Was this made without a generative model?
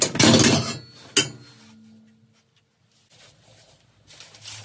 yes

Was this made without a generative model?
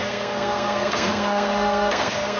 no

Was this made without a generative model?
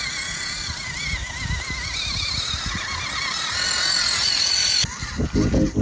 yes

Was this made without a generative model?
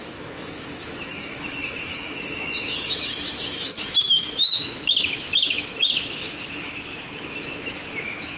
no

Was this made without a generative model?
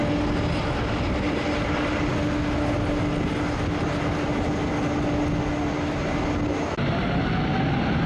yes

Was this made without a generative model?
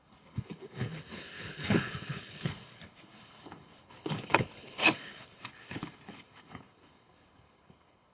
no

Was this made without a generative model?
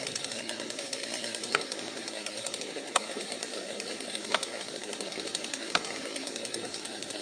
no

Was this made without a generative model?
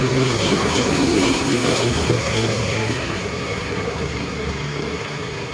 no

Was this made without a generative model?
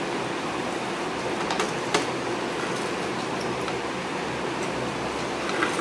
yes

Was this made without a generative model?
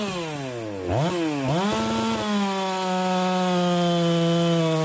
yes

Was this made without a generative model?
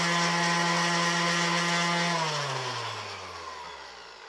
yes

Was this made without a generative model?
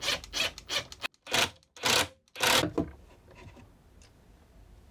yes